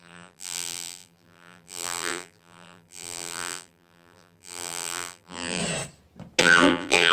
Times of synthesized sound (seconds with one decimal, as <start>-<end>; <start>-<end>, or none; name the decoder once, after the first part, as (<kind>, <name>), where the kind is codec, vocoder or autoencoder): 0.0-5.6 (vocoder, BigVGAN v2); 6.4-7.1